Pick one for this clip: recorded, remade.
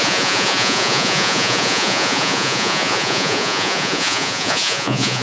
remade